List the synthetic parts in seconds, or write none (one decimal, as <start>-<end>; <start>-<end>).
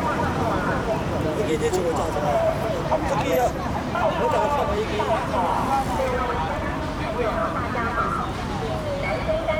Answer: 0.0-5.7; 6.5-7.4; 9.1-9.6